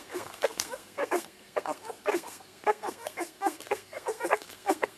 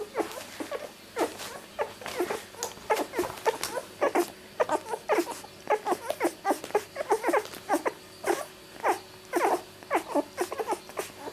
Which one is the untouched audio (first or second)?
second